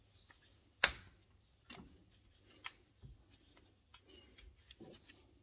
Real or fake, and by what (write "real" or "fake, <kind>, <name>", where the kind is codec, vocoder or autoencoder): real